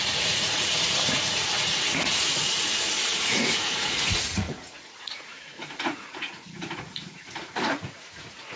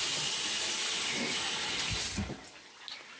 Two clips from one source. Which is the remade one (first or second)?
first